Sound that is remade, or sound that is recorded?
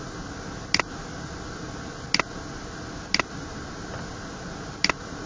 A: recorded